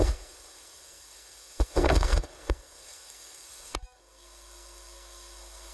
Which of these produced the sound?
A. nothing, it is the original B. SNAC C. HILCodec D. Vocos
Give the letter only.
B